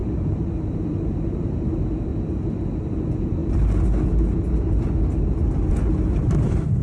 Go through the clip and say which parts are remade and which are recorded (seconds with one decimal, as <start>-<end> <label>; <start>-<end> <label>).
0.0-2.1 remade; 2.1-2.8 recorded; 2.8-3.4 remade; 3.4-5.4 recorded; 5.4-6.8 remade

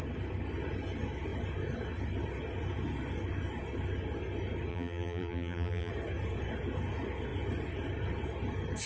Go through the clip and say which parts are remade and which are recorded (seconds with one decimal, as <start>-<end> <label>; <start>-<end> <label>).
0.0-4.7 recorded; 4.7-5.9 remade; 5.9-8.9 recorded

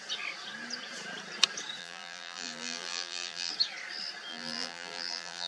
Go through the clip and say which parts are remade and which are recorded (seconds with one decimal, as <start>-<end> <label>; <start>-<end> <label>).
0.0-1.8 recorded; 1.8-3.5 remade; 3.5-4.3 recorded; 4.3-5.5 remade

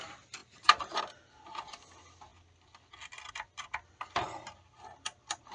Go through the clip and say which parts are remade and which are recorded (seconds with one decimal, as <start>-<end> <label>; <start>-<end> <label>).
0.0-0.4 recorded; 0.4-1.0 remade; 1.0-5.5 recorded

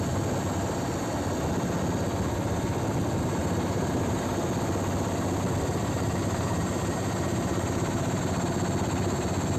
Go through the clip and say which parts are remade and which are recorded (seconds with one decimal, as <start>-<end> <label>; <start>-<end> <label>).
0.0-3.4 recorded; 3.4-4.3 remade; 4.3-5.8 recorded; 5.8-8.2 remade; 8.2-9.6 recorded

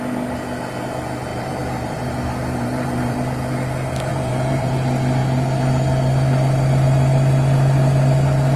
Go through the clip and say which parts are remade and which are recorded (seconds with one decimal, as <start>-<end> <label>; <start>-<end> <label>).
0.0-1.3 recorded; 1.3-3.2 remade; 3.2-4.1 recorded; 4.1-4.7 remade; 4.7-8.6 recorded

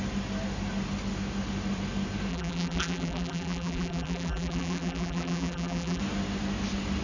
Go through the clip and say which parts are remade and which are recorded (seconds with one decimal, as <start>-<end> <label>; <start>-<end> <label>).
0.0-2.3 recorded; 2.3-6.0 remade; 6.0-7.0 recorded

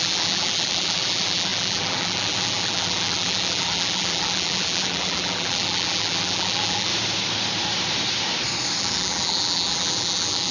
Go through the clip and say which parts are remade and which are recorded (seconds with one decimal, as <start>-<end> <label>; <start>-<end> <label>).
0.0-6.9 remade; 6.9-8.8 recorded; 8.8-10.5 remade